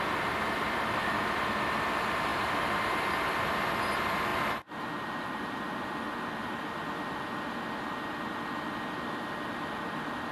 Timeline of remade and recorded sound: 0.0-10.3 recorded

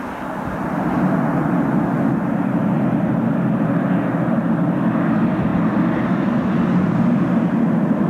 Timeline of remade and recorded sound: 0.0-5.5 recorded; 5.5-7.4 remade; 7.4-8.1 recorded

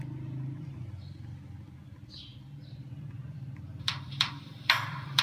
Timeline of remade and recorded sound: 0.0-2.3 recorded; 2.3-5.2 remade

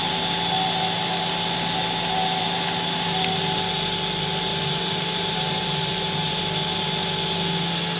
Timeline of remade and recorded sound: 0.0-4.5 recorded; 4.5-6.4 remade; 6.4-8.0 recorded

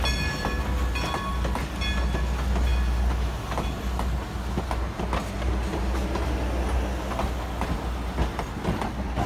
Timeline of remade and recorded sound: 0.0-9.3 recorded

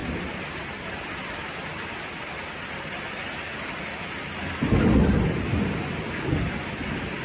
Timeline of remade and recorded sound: 0.0-7.2 recorded

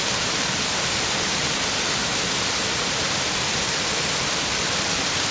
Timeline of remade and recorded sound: 0.0-2.0 remade; 2.0-3.3 recorded; 3.3-5.3 remade